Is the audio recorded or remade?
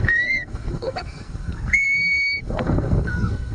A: remade